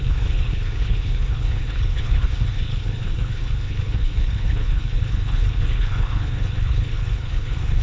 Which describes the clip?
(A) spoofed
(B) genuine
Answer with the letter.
A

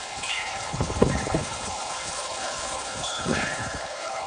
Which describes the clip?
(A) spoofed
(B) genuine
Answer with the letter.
A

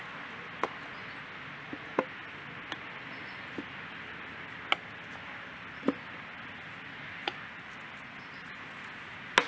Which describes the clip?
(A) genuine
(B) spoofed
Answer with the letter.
A